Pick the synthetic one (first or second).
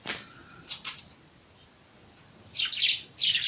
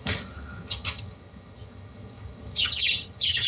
second